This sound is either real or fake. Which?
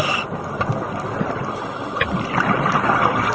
fake